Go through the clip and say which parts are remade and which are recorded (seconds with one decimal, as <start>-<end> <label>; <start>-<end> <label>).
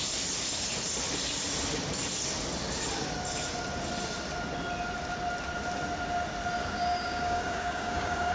0.0-6.6 recorded; 6.6-8.3 remade